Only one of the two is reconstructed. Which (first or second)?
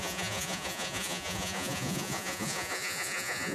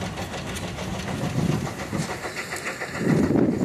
first